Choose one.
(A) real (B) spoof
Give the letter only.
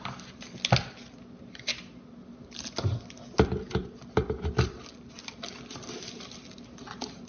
A